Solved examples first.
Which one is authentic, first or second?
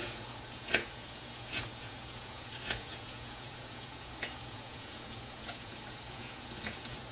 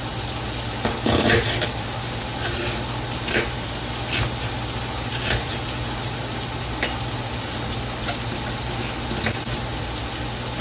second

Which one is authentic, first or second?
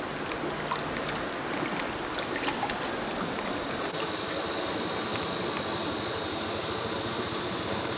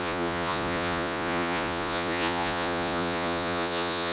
first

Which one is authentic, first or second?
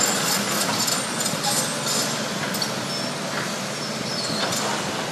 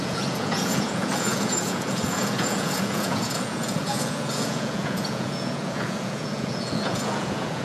first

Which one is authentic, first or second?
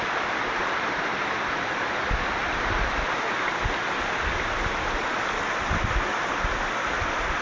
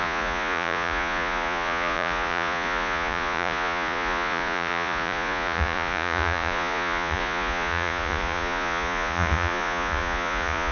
first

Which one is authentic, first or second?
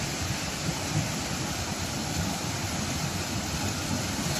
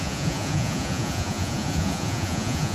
first